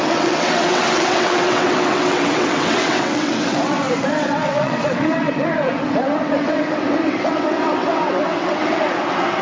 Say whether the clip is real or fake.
fake